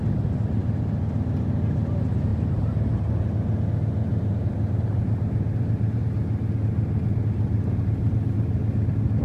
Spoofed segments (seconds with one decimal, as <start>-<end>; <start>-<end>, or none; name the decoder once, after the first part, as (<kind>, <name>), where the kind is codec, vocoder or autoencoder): 2.3-3.1 (vocoder, BigVGAN v2); 4.1-6.0